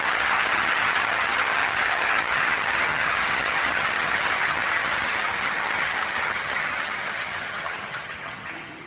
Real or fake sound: fake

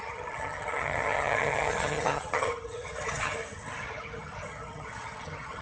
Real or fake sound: fake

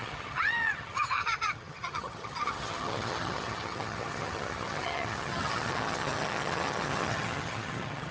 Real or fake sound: fake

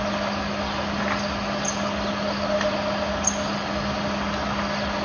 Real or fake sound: real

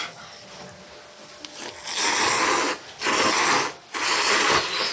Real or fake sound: real